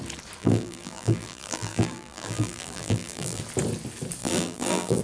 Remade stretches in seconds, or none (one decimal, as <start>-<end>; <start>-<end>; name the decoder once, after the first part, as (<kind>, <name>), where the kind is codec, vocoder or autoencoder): 0.4-3.4 (vocoder, BigVGAN v2); 4.2-5.0